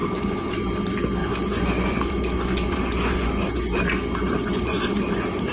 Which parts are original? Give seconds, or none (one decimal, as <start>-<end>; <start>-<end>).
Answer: 0.6-1.2; 3.8-4.2